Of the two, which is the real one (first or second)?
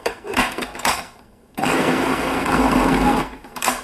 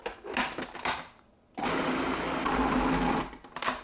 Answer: second